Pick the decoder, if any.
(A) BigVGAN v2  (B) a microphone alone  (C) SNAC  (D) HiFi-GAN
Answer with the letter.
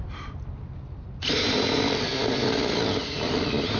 B